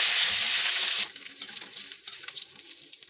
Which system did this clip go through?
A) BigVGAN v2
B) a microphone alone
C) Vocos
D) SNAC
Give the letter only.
B